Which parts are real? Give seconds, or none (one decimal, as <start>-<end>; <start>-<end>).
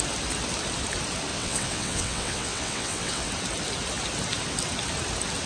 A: 0.0-1.3; 3.3-5.5